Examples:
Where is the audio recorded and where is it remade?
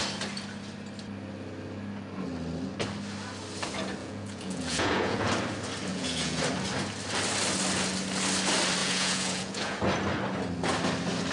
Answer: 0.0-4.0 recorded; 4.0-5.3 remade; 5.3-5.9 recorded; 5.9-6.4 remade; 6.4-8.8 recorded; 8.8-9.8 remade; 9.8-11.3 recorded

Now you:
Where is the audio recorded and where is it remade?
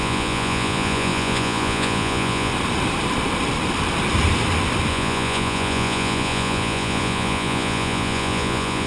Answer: 0.0-2.5 remade; 2.5-4.9 recorded; 4.9-8.9 remade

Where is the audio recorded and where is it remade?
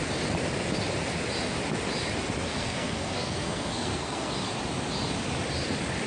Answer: 0.0-2.5 recorded; 2.5-4.3 remade; 4.3-6.1 recorded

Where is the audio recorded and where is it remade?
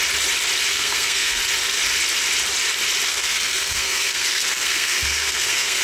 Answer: 0.0-0.7 recorded; 0.7-1.4 remade; 1.4-3.1 recorded; 3.1-5.8 remade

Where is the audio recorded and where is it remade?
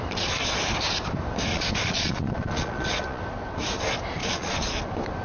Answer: 0.0-1.5 recorded; 1.5-3.2 remade; 3.2-4.2 recorded; 4.2-4.8 remade; 4.8-5.2 recorded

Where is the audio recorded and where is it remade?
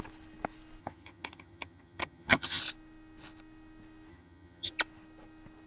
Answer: 0.0-0.8 recorded; 0.8-2.6 remade; 2.6-4.1 recorded; 4.1-4.7 remade; 4.7-5.7 recorded